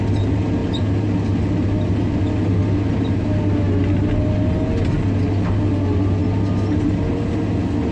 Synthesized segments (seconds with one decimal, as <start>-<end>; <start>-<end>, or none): none